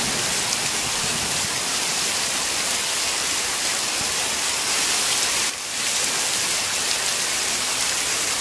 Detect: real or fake real